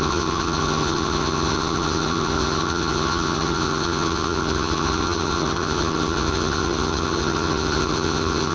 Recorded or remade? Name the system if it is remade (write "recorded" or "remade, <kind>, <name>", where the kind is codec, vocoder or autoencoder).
remade, vocoder, HiFi-GAN